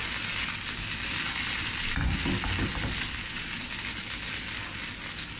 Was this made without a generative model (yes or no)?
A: yes